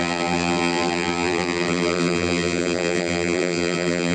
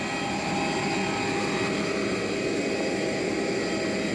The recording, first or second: second